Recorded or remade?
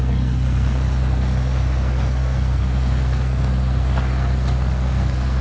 remade